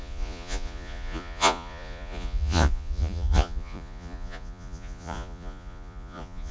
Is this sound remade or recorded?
remade